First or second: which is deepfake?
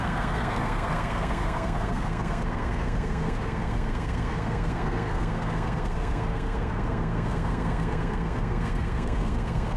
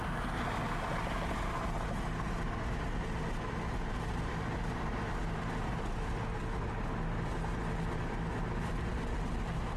first